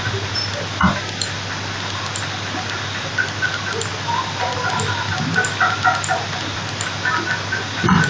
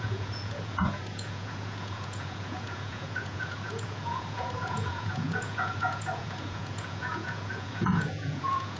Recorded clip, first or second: first